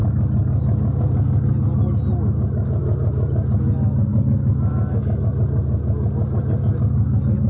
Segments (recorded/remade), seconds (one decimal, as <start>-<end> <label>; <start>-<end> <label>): 0.0-7.5 recorded